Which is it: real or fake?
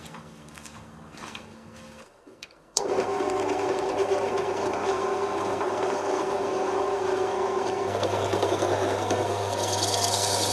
fake